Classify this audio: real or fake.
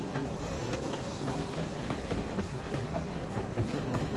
fake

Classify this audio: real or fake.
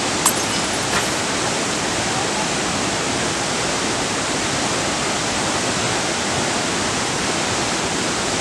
real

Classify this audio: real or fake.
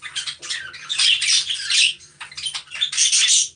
real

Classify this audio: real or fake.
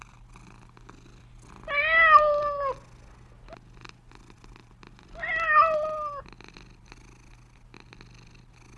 real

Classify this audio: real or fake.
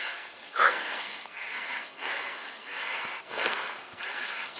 fake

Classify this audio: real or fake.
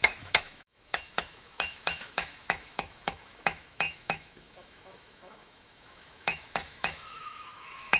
fake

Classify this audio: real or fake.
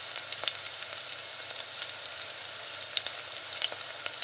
real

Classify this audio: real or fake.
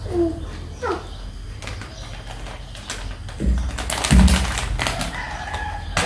real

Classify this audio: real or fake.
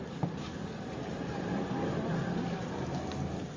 fake